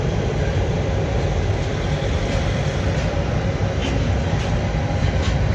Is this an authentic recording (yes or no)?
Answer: yes